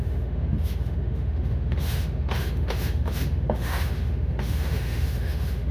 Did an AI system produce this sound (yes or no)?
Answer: yes